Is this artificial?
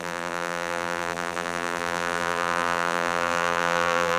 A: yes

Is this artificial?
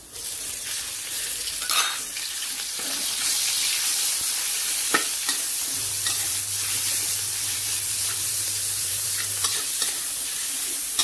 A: yes